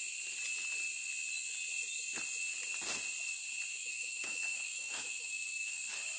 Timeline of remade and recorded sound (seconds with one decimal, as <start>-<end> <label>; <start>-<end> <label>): 0.0-3.7 recorded; 3.7-5.8 remade; 5.8-6.2 recorded